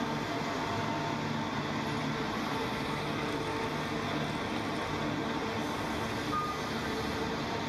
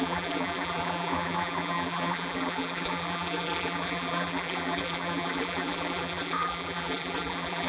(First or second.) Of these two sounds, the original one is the first